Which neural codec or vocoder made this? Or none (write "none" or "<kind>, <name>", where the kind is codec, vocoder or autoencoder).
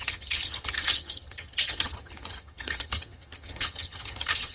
vocoder, HiFi-GAN